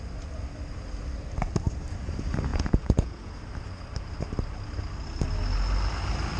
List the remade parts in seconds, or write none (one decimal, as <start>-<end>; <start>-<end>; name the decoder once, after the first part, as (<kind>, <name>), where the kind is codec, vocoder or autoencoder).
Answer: 2.5-3.3 (vocoder, Vocos)